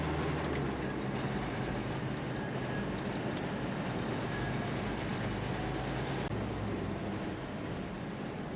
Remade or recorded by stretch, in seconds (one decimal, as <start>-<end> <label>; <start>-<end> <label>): 0.0-8.6 recorded

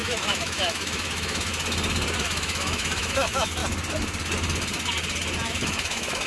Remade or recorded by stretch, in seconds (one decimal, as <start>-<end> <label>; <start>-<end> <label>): 0.0-1.5 remade; 1.5-2.2 recorded; 2.2-3.6 remade; 3.6-5.5 recorded; 5.5-6.3 remade